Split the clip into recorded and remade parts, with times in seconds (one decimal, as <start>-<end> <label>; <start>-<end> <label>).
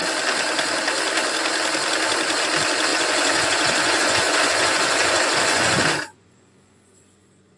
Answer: 0.0-2.9 recorded; 2.9-7.6 remade